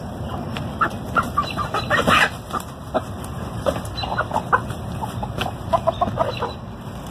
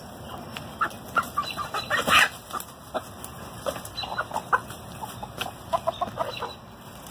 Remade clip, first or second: first